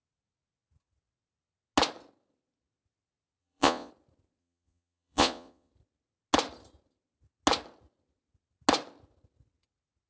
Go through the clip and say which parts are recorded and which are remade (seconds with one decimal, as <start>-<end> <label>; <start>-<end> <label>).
0.0-3.4 recorded; 3.4-3.9 remade; 3.9-4.4 recorded; 4.4-5.7 remade; 5.7-10.1 recorded